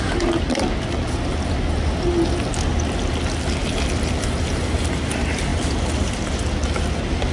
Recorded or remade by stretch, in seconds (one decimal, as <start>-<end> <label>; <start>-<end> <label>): 0.0-3.6 recorded; 3.6-4.9 remade; 4.9-7.3 recorded